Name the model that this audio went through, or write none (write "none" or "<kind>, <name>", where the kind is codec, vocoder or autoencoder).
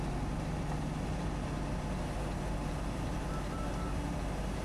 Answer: none